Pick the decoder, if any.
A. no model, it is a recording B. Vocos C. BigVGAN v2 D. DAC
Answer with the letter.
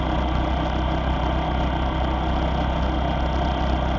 A